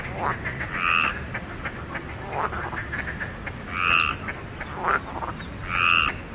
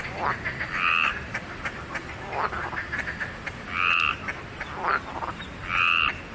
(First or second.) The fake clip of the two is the second